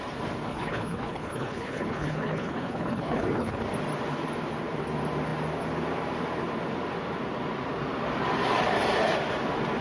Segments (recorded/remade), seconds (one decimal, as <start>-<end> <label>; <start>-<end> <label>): 0.0-0.5 recorded; 0.5-3.6 remade; 3.6-9.8 recorded